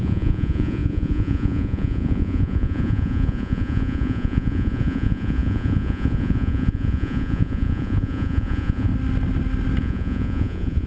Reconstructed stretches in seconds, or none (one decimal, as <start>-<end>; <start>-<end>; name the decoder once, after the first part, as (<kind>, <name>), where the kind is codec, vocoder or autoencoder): 0.0-8.9 (vocoder, Vocos); 9.8-10.9